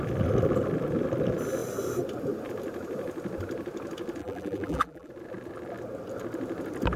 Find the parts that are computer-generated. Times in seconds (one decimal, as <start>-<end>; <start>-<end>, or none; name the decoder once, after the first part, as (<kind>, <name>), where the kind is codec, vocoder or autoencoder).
4.2-5.1 (vocoder, BigVGAN v2)